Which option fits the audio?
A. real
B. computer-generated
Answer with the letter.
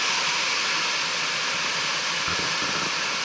A